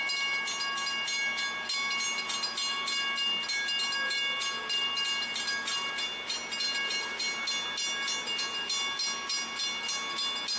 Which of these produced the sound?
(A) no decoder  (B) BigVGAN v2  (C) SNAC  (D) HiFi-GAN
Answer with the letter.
A